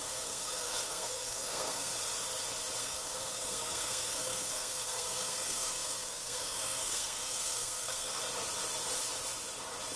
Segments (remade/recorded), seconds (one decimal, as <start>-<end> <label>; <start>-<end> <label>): 0.0-1.9 remade; 1.9-2.8 recorded; 2.8-8.2 remade; 8.2-10.0 recorded